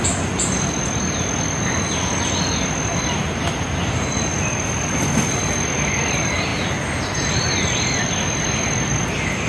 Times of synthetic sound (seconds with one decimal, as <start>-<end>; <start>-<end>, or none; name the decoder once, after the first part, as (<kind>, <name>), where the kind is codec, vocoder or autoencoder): none